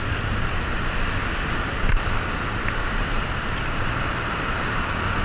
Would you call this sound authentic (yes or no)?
yes